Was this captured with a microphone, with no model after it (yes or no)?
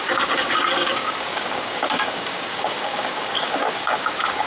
no